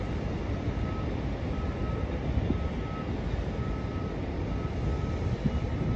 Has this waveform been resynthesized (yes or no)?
no